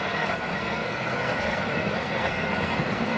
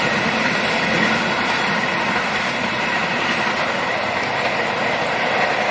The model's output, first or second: first